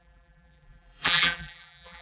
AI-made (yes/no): yes